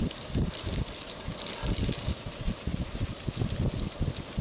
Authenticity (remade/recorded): recorded